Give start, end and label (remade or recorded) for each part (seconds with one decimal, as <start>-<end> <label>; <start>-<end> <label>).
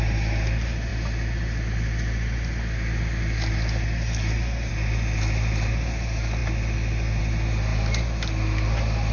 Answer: 0.0-9.1 recorded